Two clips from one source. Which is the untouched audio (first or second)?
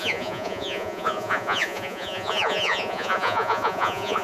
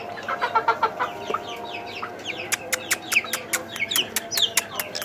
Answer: second